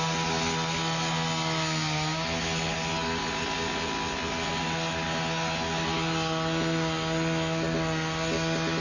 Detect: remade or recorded recorded